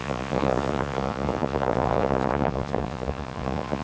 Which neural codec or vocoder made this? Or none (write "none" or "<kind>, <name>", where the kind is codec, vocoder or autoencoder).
vocoder, Vocos